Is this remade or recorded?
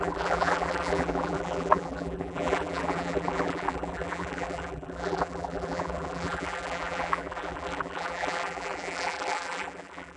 remade